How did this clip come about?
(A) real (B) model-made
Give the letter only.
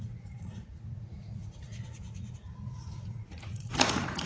B